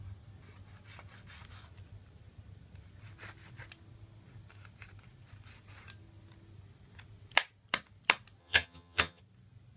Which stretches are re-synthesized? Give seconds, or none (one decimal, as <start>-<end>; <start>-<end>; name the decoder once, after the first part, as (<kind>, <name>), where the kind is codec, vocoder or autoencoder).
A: 8.4-9.2 (vocoder, HiFi-GAN)